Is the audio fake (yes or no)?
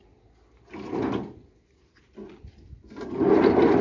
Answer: no